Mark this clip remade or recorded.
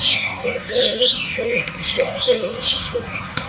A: remade